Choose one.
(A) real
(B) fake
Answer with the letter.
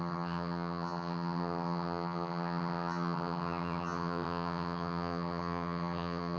B